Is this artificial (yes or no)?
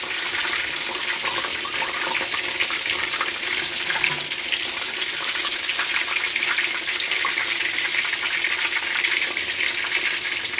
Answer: yes